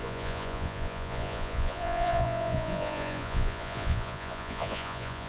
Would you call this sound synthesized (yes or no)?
yes